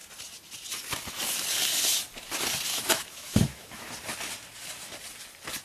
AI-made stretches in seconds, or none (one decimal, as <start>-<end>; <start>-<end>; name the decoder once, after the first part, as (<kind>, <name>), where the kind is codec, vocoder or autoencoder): 2.7-3.9 (autoencoder, DAC-VAE)